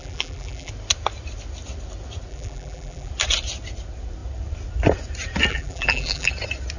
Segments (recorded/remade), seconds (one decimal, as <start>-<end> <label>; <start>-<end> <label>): 0.0-0.7 remade; 0.7-2.3 recorded; 2.3-3.1 remade; 3.1-5.5 recorded; 5.5-6.3 remade; 6.3-6.8 recorded